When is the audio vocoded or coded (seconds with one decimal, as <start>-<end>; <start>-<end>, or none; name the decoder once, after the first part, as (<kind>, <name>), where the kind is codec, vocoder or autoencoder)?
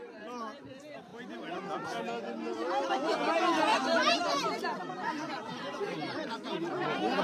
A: 3.7-6.5 (vocoder, BigVGAN v2)